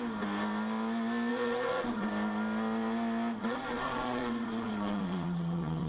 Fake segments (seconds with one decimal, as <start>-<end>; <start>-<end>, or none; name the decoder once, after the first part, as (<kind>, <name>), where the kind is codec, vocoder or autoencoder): 1.3-2.1 (vocoder, WaveNeXt); 3.4-5.9